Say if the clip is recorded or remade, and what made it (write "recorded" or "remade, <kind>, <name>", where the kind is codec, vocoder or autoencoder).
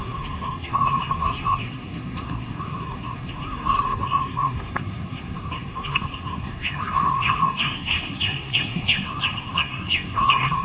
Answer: remade, codec, SNAC